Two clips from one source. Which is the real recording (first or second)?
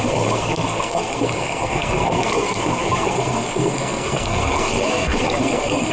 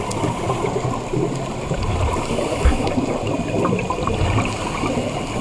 second